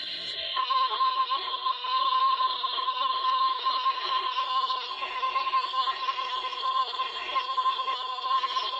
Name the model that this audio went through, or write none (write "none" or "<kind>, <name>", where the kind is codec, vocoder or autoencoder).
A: codec, SNAC